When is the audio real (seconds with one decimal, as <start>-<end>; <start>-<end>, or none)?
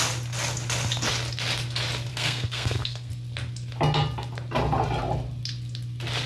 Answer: 0.0-2.1; 3.1-6.3